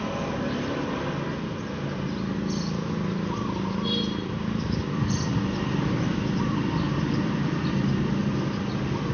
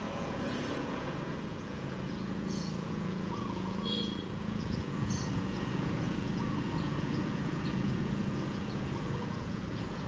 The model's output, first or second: second